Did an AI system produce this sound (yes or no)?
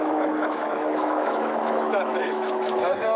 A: yes